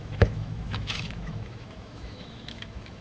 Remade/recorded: remade